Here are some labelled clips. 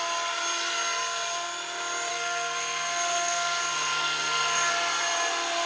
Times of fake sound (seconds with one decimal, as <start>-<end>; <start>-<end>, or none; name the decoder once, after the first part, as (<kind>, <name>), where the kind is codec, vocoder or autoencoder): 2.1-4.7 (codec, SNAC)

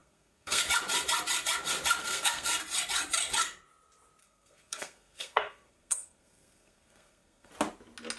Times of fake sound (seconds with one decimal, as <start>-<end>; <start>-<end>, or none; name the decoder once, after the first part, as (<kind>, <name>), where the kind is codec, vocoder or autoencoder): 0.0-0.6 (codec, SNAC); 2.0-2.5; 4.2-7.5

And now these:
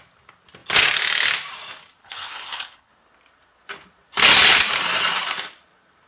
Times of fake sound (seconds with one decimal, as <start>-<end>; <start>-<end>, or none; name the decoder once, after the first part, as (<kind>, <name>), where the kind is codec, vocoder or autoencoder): 2.0-2.9 (codec, HILCodec)